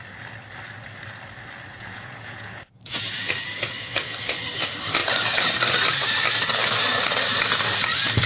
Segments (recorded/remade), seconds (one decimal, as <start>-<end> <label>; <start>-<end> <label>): 0.0-1.7 recorded; 1.7-3.3 remade; 3.3-8.3 recorded